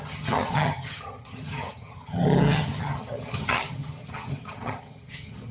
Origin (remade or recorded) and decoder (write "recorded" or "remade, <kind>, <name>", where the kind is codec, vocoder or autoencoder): remade, vocoder, HiFi-GAN